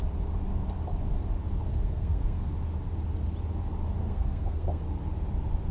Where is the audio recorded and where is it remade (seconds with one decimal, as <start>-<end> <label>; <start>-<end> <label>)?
0.0-1.7 recorded; 1.7-2.5 remade; 2.5-4.0 recorded; 4.0-4.8 remade; 4.8-5.7 recorded